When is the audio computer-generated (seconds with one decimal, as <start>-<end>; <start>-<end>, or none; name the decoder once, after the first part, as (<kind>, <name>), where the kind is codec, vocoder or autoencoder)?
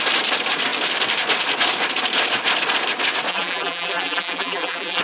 3.3-5.0 (vocoder, BigVGAN v2)